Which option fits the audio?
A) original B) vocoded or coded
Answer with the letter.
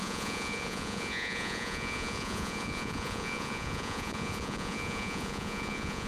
B